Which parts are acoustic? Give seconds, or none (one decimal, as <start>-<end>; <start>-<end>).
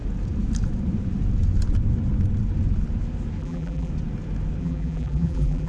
0.0-3.4; 3.9-4.6